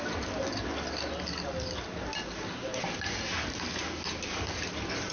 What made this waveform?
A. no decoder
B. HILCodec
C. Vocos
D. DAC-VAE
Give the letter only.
A